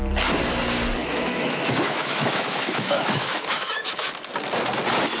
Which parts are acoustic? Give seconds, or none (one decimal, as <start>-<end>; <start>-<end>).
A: 0.0-1.0; 4.1-5.2